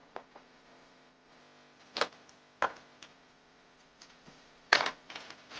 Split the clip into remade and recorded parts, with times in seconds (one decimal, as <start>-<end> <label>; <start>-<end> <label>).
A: 0.0-1.4 remade; 1.4-3.1 recorded; 3.1-5.1 remade; 5.1-5.6 recorded